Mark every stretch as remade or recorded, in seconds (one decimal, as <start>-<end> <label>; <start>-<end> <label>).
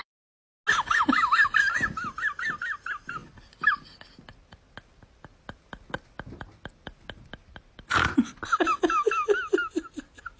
0.0-10.4 recorded